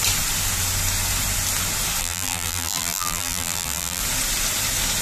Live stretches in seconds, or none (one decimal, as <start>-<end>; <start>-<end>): 0.0-2.0; 4.0-5.0